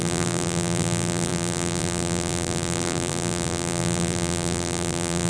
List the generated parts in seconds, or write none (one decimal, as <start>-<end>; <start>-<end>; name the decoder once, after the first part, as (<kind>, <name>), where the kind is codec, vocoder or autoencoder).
0.0-5.3 (vocoder, BigVGAN v2)